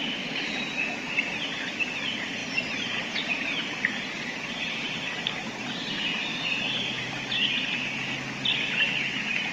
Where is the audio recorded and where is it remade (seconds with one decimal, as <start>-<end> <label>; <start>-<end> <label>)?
0.0-0.7 remade; 0.7-2.4 recorded; 2.4-3.6 remade; 3.6-6.3 recorded; 6.3-7.4 remade; 7.4-9.5 recorded